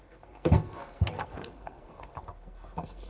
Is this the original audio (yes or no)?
no